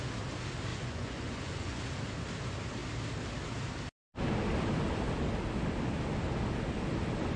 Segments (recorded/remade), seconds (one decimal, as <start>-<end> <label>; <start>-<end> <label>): 0.0-0.7 recorded; 0.7-1.8 remade; 1.8-7.4 recorded